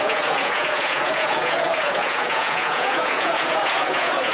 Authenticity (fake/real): fake